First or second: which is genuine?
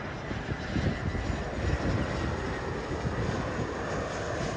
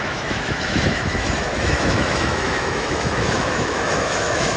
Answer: first